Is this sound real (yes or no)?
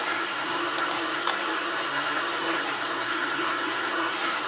no